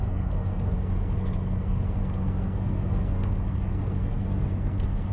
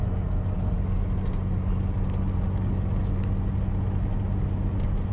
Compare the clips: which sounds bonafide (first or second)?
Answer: second